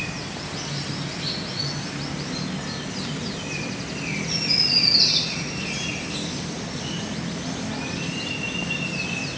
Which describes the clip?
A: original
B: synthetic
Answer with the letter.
A